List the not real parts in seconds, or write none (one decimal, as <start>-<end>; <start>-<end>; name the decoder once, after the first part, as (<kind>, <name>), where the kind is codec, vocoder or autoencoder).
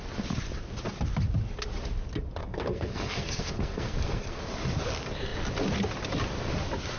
2.4-4.4 (codec, SNAC)